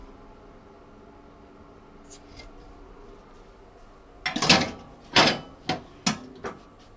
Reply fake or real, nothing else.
real